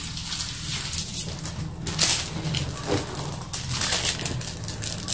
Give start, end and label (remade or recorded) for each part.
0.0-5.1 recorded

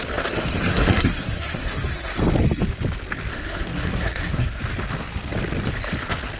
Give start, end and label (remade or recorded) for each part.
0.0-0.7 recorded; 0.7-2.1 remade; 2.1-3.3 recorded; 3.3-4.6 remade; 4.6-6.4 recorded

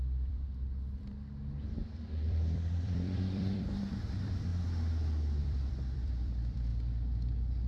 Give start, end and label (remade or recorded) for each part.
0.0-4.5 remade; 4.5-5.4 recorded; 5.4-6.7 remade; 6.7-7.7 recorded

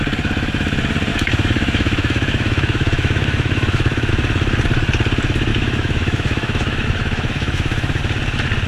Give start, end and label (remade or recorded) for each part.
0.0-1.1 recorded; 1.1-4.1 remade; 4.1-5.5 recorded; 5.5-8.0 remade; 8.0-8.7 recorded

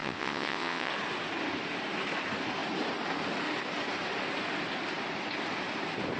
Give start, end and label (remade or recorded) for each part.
0.0-0.9 remade; 0.9-6.2 recorded

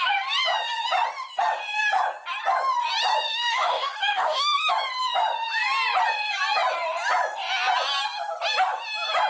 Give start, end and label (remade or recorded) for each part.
0.0-3.3 recorded; 3.3-4.7 remade; 4.7-9.3 recorded